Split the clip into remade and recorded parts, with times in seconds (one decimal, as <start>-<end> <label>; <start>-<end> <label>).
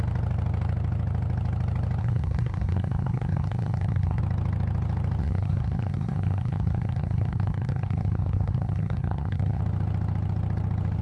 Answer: 0.0-2.0 recorded; 2.0-4.2 remade; 4.2-5.2 recorded; 5.2-9.6 remade; 9.6-11.0 recorded